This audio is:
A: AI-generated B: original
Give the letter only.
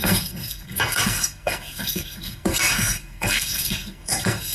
A